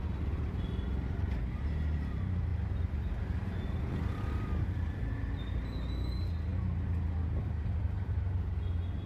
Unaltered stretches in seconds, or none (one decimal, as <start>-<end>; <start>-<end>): 0.0-9.1